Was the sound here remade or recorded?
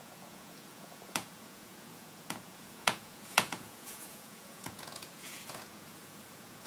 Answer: remade